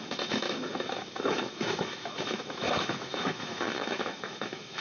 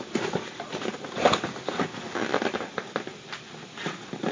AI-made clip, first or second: first